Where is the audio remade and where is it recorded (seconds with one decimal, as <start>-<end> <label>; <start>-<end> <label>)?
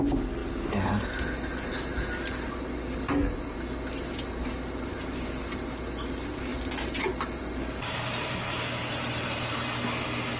0.0-10.4 recorded